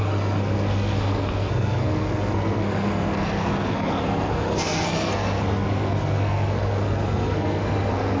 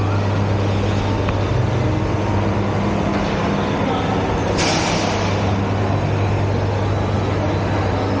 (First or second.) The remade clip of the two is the first